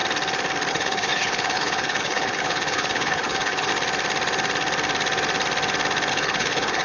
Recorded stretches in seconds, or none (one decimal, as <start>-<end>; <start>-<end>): 0.0-0.7; 3.7-6.1